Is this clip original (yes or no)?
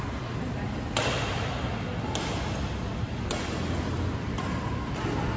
yes